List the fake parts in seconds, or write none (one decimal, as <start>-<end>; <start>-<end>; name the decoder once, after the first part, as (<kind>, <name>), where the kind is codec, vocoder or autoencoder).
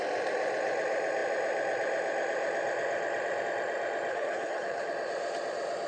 4.1-4.9 (codec, HILCodec)